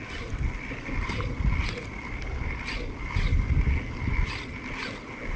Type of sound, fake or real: real